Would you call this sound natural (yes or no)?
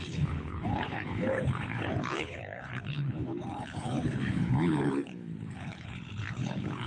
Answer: no